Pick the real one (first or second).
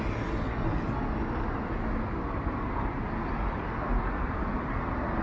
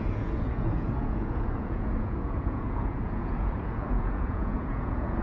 first